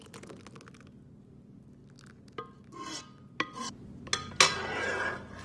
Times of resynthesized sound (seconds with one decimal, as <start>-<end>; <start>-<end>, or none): none